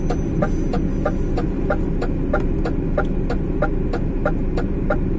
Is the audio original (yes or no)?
yes